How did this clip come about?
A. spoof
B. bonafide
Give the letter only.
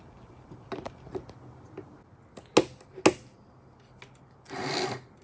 B